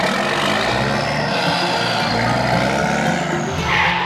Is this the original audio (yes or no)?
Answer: yes